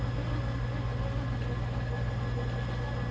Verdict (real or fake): real